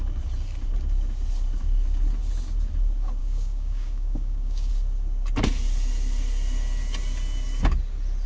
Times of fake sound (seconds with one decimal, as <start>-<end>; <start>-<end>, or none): 3.2-4.7